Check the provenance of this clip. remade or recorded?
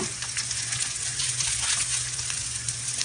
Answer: remade